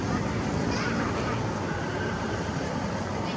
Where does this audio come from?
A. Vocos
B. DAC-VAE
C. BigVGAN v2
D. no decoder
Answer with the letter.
C